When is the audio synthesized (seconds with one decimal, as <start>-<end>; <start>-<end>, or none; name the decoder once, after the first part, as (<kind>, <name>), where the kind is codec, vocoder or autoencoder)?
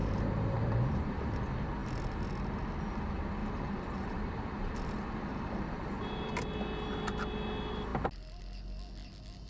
0.0-1.4 (vocoder, BigVGAN v2); 3.4-6.3